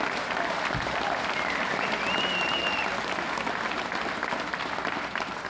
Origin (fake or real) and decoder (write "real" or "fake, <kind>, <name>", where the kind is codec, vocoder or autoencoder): real